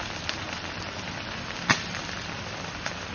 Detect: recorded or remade remade